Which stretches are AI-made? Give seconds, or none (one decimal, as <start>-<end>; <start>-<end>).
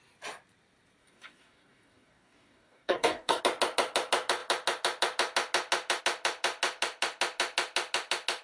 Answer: 1.0-3.4